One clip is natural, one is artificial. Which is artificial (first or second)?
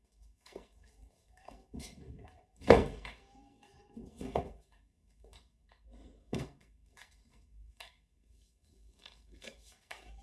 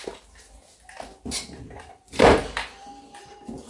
first